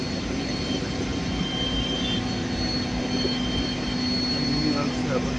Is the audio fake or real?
real